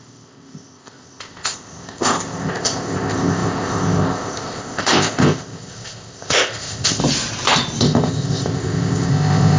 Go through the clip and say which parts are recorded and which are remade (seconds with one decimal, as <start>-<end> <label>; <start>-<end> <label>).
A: 0.0-7.0 remade; 7.0-7.8 recorded; 7.8-9.6 remade